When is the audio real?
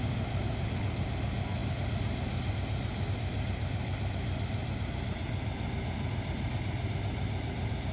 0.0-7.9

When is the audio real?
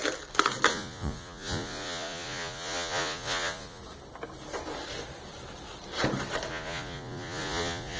0.0-0.7; 3.8-6.5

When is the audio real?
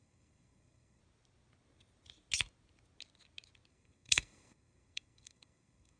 1.0-3.7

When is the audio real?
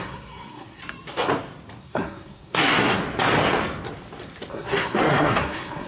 0.8-1.8; 3.0-4.5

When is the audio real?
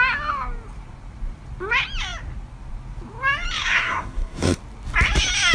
0.0-3.6; 4.6-5.5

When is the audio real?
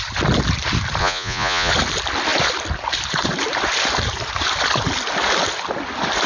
0.0-1.0; 1.7-6.3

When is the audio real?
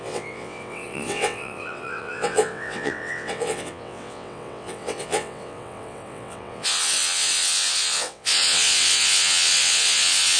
none